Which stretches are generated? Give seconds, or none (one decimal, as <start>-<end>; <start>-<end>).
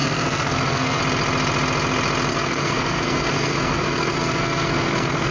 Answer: 0.0-1.0; 2.3-5.3